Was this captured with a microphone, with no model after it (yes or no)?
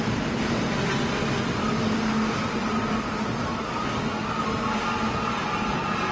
yes